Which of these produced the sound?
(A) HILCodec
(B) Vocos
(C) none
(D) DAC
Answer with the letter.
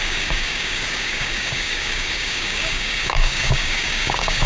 D